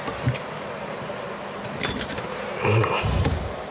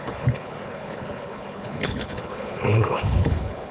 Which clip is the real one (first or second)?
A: first